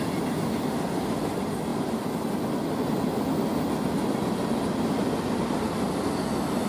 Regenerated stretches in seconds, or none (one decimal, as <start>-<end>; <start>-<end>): none